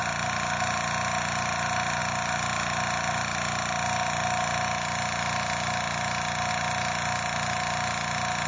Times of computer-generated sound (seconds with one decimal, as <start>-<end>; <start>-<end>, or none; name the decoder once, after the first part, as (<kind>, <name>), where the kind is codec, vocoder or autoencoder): none